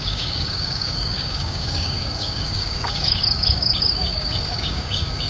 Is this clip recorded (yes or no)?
no